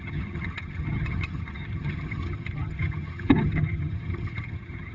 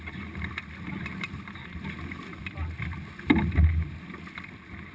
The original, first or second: second